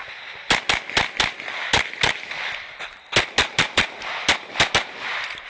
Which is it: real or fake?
real